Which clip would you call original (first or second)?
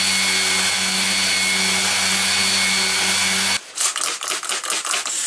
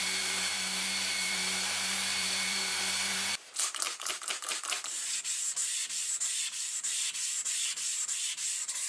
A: first